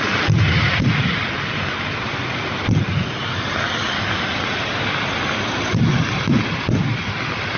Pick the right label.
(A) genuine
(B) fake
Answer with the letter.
A